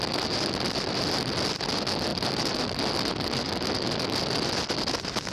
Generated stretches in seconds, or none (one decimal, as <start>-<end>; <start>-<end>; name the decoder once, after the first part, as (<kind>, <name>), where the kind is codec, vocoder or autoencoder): none